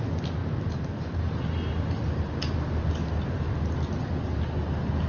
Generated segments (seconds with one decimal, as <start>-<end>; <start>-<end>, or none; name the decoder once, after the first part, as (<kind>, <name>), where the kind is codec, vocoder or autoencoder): none